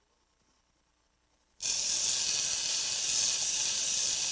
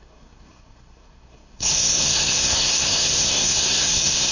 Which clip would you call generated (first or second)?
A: second